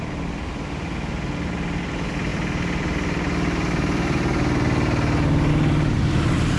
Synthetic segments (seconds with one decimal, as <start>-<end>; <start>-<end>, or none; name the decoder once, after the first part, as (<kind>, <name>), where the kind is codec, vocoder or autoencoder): none